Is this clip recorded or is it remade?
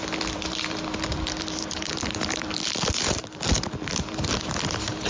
remade